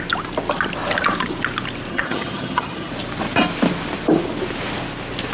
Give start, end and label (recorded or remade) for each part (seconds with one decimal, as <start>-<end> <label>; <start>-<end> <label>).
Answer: 0.0-1.9 recorded; 1.9-2.9 remade; 2.9-5.3 recorded